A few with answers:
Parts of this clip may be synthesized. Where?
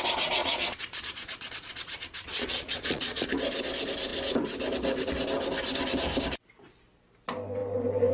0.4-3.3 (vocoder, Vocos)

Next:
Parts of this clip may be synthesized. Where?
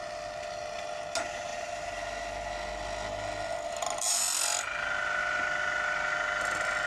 none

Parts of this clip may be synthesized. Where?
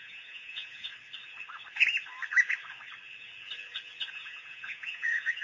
0.0-0.9 (vocoder, Vocos); 4.1-5.4